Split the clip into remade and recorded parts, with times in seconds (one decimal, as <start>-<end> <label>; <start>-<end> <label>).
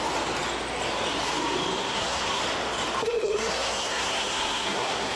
0.0-1.8 recorded; 1.8-2.4 remade; 2.4-3.0 recorded; 3.0-5.2 remade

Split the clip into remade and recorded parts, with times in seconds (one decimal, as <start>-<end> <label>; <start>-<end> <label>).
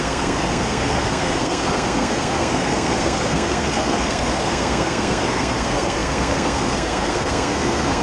0.0-8.0 remade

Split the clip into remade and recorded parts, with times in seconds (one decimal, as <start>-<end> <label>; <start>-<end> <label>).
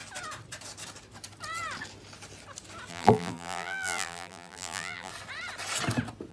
0.0-2.9 recorded; 2.9-5.1 remade; 5.1-6.3 recorded